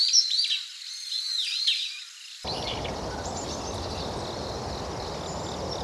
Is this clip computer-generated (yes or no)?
no